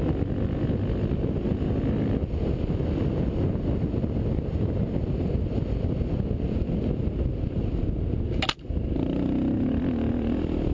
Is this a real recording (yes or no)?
yes